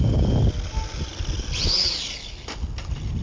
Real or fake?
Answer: real